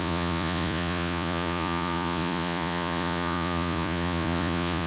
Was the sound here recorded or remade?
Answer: remade